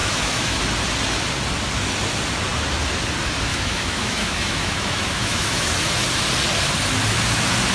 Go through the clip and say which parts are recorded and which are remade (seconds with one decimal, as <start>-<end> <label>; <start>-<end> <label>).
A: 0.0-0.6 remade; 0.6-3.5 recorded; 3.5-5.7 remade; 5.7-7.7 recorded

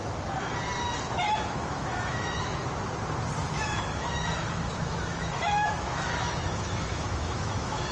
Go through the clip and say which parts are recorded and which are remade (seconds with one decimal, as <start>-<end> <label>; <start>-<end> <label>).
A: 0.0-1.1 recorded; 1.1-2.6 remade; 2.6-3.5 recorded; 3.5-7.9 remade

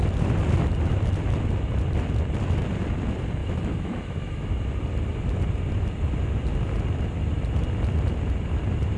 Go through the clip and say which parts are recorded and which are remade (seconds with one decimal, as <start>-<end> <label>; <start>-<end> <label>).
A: 0.0-3.4 recorded; 3.4-4.5 remade; 4.5-9.0 recorded

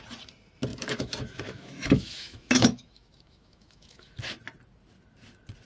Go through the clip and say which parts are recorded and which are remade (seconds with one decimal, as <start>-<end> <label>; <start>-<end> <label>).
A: 0.0-0.7 recorded; 0.7-4.1 remade; 4.1-5.7 recorded

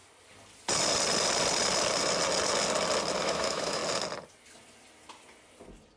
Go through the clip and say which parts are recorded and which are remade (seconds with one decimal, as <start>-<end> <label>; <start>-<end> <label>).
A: 0.0-3.2 recorded; 3.2-3.8 remade; 3.8-6.0 recorded